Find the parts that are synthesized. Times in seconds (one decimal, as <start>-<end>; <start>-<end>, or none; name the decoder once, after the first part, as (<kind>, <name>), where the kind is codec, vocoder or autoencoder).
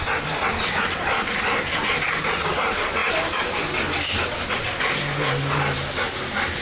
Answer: 3.0-4.8 (vocoder, BigVGAN v2)